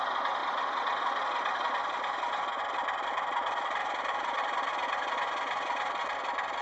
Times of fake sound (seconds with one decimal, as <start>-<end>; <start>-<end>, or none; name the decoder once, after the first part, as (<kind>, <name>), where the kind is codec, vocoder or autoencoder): 3.8-4.7 (vocoder, BigVGAN v2)